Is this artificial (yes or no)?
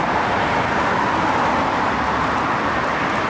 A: no